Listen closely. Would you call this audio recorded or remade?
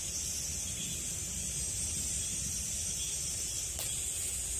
recorded